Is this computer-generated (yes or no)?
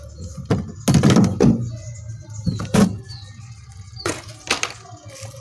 no